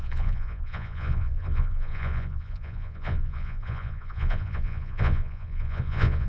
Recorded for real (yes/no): no